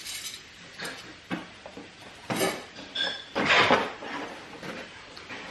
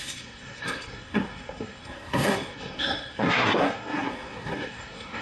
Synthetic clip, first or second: second